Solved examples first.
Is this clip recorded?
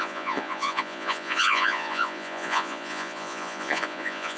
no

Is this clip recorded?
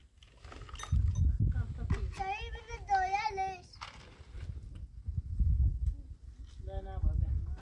yes